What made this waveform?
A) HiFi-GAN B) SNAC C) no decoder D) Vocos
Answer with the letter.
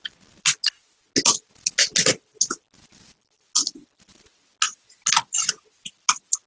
C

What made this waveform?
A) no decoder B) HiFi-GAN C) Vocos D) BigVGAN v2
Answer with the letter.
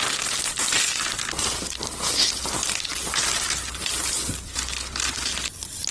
A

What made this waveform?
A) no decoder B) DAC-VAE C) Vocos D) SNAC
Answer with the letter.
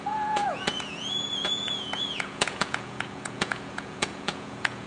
C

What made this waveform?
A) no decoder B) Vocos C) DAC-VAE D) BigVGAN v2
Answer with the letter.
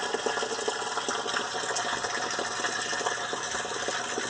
A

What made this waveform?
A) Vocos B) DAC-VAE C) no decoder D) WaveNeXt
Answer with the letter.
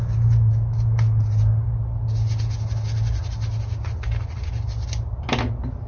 C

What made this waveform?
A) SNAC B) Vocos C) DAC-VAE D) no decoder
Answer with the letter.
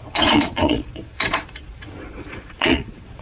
B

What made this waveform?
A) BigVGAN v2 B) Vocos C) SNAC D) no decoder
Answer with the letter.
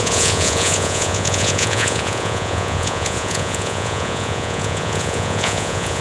B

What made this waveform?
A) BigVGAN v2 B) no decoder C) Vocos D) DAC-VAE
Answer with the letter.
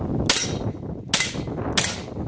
B